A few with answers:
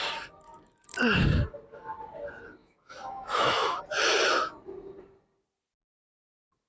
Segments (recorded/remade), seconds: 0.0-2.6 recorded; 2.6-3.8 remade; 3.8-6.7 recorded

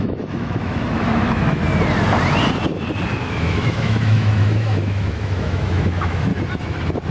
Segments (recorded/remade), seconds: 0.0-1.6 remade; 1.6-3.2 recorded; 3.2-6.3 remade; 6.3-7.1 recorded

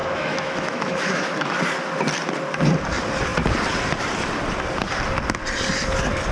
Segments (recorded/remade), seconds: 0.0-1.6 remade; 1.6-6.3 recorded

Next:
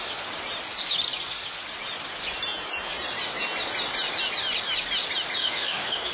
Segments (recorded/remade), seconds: 0.0-5.4 recorded; 5.4-6.1 remade

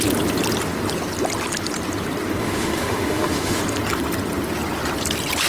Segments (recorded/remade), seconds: 0.0-2.4 recorded; 2.4-3.6 remade; 3.6-5.5 recorded

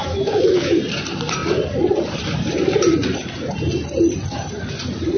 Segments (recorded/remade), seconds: 0.0-0.8 remade; 0.8-5.2 recorded

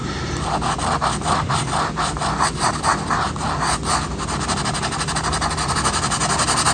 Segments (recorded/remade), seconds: 0.0-6.7 recorded

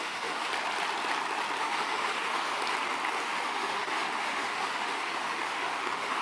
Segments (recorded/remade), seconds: 0.0-0.5 remade; 0.5-1.6 recorded; 1.6-2.6 remade; 2.6-3.2 recorded; 3.2-6.2 remade